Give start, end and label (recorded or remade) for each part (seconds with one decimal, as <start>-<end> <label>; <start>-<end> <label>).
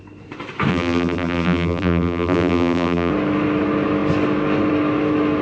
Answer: 0.0-0.7 recorded; 0.7-3.1 remade; 3.1-5.4 recorded